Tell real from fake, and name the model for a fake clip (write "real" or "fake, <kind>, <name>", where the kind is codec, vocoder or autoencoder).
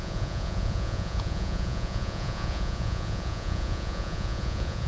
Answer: fake, vocoder, Vocos